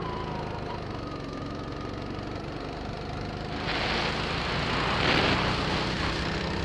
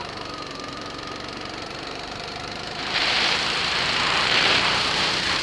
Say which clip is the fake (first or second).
second